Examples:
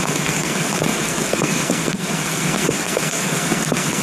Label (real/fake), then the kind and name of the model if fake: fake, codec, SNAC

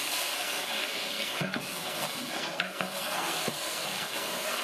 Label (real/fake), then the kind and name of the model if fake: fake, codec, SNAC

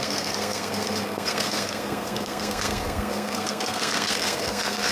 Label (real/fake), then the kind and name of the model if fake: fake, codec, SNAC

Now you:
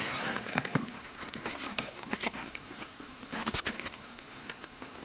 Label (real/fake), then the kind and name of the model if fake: fake, codec, SNAC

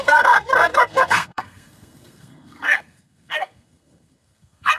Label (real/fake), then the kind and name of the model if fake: fake, codec, SNAC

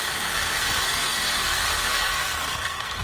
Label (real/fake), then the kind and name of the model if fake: fake, codec, SNAC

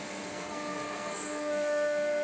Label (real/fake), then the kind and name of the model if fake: fake, codec, SNAC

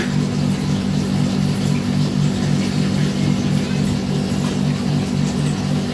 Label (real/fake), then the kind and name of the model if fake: real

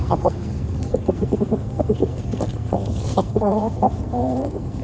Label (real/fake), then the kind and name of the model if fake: fake, codec, SNAC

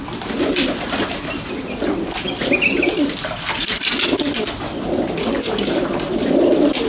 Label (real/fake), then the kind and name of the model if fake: real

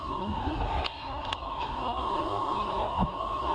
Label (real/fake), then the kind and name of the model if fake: fake, codec, SNAC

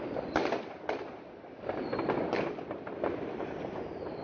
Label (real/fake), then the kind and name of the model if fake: real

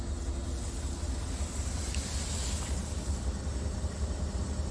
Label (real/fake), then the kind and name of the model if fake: real